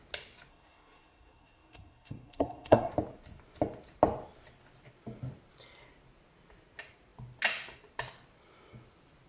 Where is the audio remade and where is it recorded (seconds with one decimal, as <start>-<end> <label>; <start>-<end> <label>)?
0.0-0.5 recorded; 0.5-2.9 remade; 2.9-9.3 recorded